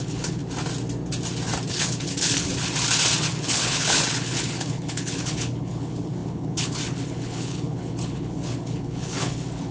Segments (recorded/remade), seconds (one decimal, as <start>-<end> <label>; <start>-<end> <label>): 0.0-0.4 remade; 0.4-1.7 recorded; 1.7-2.5 remade; 2.5-3.3 recorded; 3.3-9.7 remade